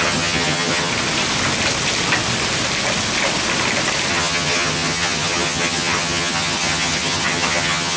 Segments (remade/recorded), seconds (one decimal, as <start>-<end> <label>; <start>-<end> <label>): 0.0-0.9 remade; 0.9-4.1 recorded; 4.1-8.0 remade